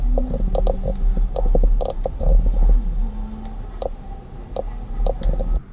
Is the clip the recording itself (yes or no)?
yes